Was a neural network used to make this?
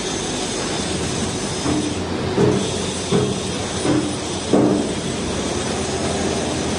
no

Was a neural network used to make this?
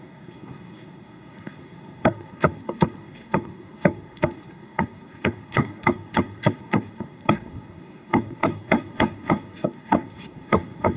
yes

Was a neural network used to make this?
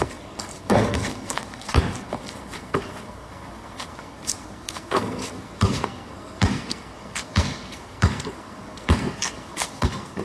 yes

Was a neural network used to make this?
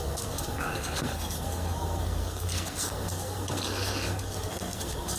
yes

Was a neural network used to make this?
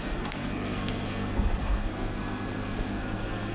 yes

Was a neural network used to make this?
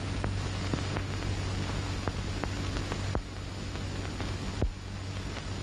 no